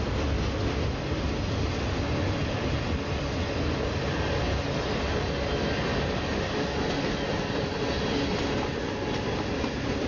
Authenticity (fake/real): real